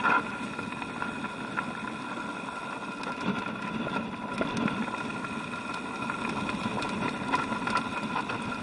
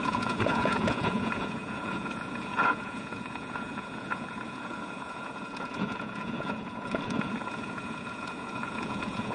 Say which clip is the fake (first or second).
second